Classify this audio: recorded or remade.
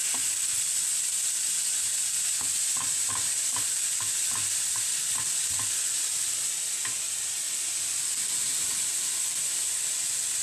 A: recorded